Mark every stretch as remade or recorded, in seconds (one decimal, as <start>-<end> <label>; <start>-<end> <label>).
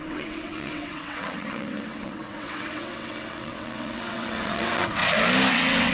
0.0-5.0 remade; 5.0-5.5 recorded; 5.5-5.9 remade